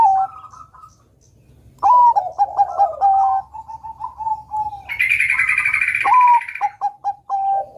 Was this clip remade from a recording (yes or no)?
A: no